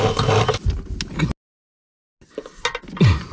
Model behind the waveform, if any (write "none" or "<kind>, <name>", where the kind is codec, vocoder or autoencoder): none